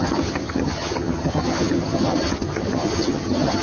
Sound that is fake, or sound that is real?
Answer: fake